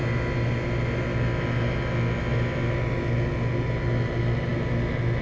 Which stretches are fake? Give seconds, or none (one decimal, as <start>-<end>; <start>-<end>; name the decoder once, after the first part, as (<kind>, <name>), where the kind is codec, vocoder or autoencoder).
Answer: none